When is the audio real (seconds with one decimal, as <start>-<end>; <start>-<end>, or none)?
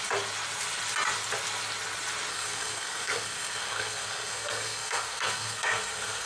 0.0-2.3